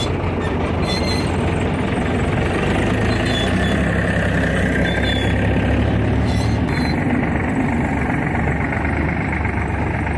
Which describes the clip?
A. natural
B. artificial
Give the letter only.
A